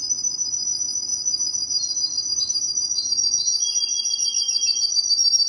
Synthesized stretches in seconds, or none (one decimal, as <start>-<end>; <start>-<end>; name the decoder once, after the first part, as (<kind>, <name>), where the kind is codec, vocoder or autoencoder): none